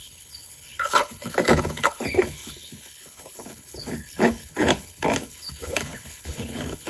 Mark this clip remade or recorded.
remade